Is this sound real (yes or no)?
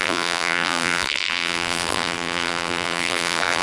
no